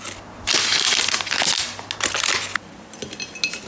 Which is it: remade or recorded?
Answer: recorded